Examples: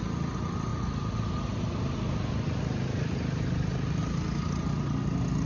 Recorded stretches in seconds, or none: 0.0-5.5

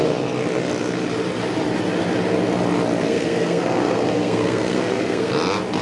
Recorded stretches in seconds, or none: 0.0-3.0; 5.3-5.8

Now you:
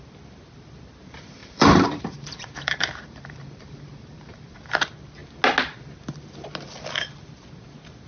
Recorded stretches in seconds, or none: 0.0-1.4; 4.7-8.1

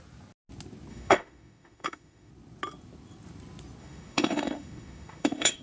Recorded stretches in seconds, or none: 0.0-0.9; 2.3-3.8

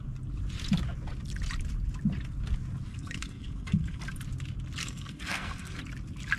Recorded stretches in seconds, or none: 0.0-2.9; 4.0-4.8; 5.8-6.4

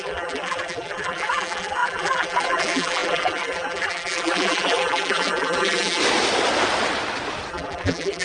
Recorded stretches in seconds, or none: 6.0-7.5